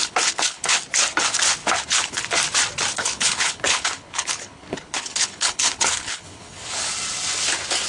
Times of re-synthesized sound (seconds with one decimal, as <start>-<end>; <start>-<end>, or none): 0.0-0.8; 1.6-2.3; 2.9-6.9